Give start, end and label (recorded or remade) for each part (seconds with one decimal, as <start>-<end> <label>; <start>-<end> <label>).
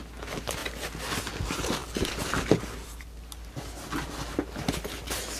0.0-5.4 recorded